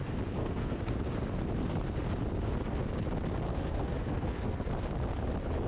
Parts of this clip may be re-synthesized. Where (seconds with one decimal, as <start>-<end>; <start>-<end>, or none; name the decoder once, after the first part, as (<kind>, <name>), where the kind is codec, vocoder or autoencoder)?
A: 0.4-0.9 (codec, SNAC); 3.5-4.7